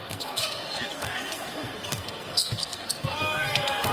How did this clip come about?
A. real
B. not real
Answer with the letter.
B